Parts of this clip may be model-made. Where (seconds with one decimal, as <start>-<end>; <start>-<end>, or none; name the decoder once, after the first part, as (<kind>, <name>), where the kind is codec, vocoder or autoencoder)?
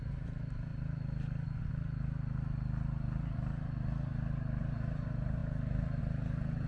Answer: 0.0-0.7 (vocoder, BigVGAN v2); 4.6-6.7